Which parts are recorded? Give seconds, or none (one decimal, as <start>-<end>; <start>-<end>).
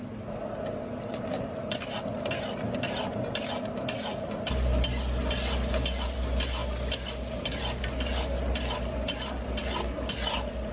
0.0-10.7